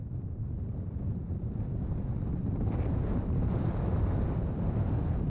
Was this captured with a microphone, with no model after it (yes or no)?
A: yes